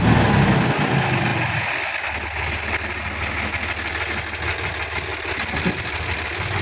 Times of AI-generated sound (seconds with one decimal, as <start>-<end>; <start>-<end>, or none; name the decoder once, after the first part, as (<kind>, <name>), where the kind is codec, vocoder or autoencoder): none